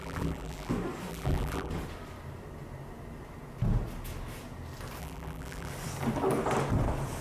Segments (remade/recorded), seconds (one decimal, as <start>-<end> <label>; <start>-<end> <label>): 0.0-0.7 remade; 0.7-1.1 recorded; 1.1-1.7 remade; 1.7-5.0 recorded; 5.0-5.7 remade; 5.7-7.2 recorded